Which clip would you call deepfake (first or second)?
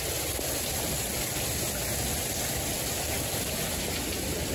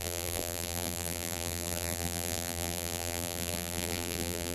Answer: second